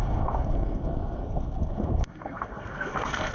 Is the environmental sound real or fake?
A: fake